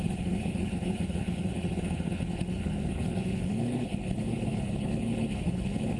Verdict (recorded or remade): remade